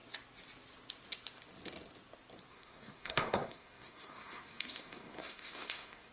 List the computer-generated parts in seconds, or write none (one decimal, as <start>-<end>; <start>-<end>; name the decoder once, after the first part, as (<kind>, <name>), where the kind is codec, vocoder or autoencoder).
2.5-6.1 (codec, SNAC)